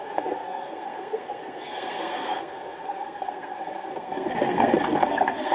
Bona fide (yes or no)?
no